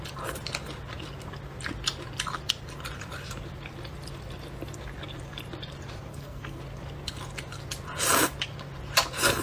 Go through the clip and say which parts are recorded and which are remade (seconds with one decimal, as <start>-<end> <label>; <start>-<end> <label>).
0.0-6.1 recorded; 6.1-6.6 remade; 6.6-9.4 recorded